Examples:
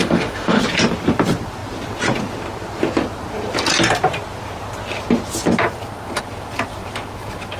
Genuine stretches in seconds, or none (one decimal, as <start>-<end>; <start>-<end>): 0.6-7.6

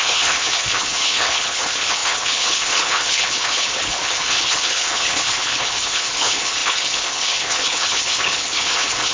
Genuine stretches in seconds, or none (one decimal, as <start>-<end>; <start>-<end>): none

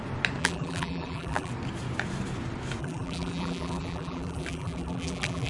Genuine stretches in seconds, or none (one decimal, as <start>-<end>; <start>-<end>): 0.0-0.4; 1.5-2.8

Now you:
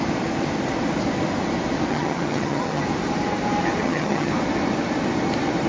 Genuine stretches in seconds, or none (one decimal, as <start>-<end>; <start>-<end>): 0.0-1.9; 2.8-3.8; 4.3-5.7

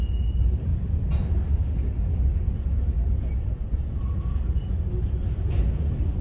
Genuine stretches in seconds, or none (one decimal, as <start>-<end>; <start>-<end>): 0.0-6.2